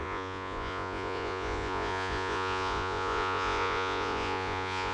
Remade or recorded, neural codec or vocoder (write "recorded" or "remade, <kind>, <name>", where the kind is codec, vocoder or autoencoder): remade, vocoder, Vocos